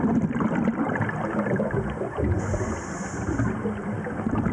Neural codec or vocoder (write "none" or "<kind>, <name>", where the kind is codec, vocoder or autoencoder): none